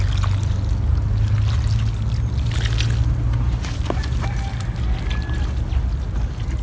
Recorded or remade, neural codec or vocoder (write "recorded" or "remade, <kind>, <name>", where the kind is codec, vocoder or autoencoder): recorded